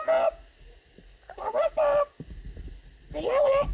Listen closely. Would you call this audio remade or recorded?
recorded